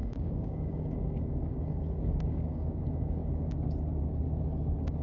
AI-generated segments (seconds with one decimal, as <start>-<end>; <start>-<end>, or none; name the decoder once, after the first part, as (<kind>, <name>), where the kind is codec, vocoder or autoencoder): 0.0-2.8 (codec, DAC)